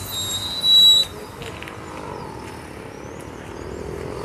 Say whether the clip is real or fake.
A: real